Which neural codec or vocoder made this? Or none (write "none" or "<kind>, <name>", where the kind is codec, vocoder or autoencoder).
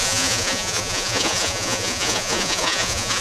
vocoder, Vocos